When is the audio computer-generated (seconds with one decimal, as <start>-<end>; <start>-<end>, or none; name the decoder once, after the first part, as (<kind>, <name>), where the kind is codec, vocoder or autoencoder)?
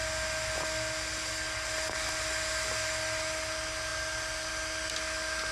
none